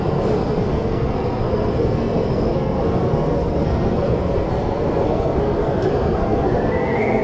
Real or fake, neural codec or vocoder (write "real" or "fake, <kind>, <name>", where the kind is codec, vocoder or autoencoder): fake, codec, SNAC